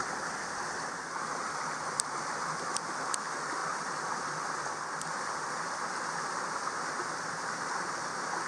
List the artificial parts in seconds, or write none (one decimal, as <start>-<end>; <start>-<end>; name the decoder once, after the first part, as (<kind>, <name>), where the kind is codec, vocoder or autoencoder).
none